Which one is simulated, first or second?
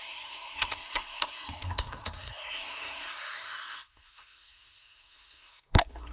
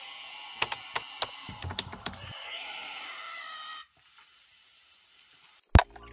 first